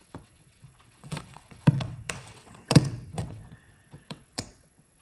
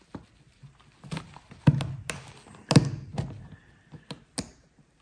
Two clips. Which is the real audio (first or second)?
second